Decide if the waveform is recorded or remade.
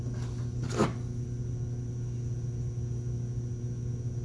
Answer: recorded